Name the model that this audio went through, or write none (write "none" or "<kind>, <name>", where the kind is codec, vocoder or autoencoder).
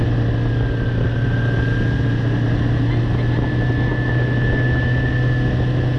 none